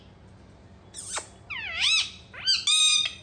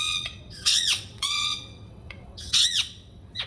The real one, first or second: first